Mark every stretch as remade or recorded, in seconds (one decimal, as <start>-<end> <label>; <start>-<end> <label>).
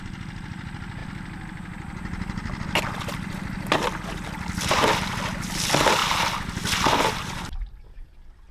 0.0-8.5 recorded